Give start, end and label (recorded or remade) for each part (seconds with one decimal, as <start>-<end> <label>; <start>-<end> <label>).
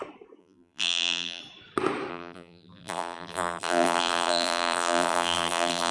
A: 0.0-0.4 recorded; 0.4-1.4 remade; 1.4-2.1 recorded; 2.1-5.9 remade